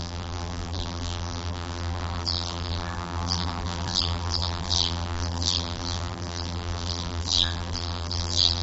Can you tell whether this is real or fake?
fake